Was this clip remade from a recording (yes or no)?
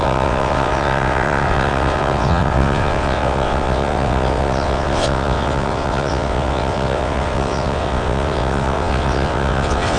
yes